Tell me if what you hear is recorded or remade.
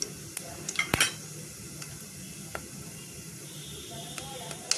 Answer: recorded